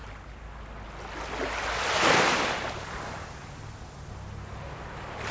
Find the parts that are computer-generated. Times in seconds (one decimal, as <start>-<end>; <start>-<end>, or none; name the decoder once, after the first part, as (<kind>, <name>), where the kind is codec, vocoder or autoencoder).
none